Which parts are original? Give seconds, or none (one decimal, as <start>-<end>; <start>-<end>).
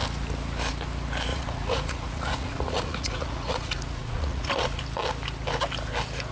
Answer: 0.0-1.3; 4.8-6.3